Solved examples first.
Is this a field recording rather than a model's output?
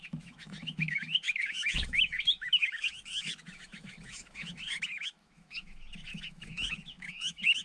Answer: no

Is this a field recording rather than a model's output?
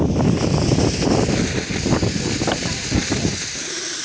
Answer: yes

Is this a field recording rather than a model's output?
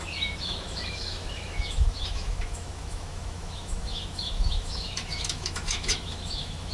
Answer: no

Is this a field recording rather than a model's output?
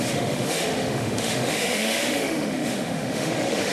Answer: no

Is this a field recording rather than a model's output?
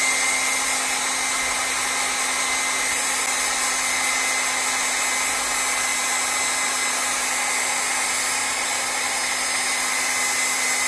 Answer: yes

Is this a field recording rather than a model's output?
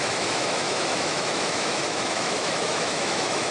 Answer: no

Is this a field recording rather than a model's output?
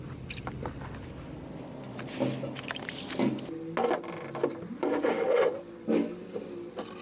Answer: yes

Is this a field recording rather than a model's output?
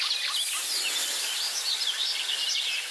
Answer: yes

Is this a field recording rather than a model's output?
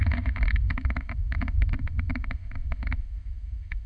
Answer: no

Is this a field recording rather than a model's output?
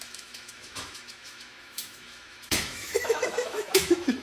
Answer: no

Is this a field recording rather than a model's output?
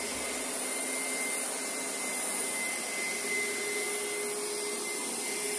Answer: yes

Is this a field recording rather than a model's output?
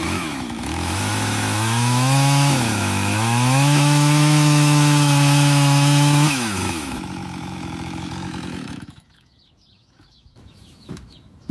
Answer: no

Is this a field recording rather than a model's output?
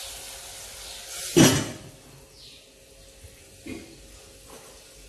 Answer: yes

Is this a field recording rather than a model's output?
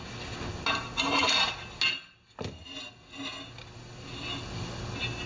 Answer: yes